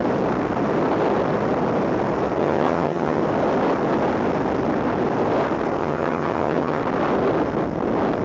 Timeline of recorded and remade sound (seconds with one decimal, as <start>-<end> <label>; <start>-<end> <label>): 0.0-2.4 recorded; 2.4-3.2 remade; 3.2-5.8 recorded; 5.8-6.8 remade; 6.8-8.2 recorded